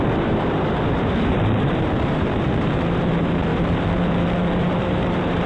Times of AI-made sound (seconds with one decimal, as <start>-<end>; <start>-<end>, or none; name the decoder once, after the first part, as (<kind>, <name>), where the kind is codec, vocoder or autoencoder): 0.0-5.5 (vocoder, BigVGAN v2)